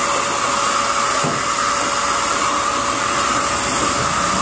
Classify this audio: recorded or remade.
recorded